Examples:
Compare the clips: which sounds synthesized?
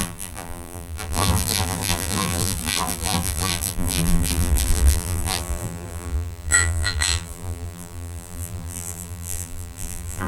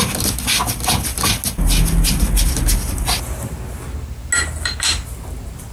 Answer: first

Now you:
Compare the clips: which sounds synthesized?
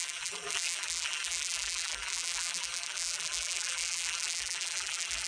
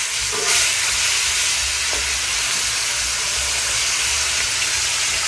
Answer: first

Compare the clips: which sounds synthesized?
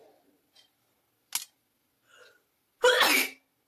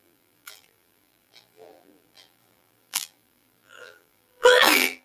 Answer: second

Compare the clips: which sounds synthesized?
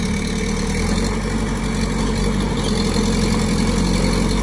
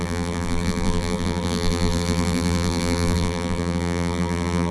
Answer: second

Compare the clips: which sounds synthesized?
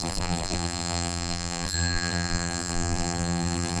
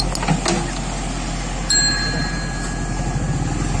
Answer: first